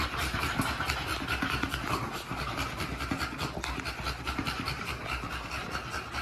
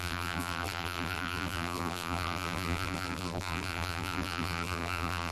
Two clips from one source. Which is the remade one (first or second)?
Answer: second